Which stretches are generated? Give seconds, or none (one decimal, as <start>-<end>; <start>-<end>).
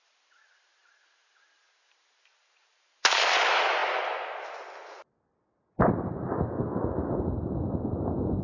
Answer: none